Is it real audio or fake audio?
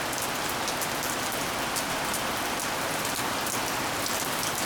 real